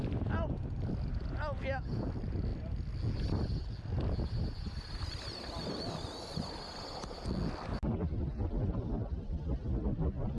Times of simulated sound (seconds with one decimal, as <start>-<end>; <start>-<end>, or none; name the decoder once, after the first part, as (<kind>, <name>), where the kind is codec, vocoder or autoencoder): none